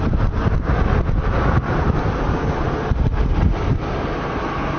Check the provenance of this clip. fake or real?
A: real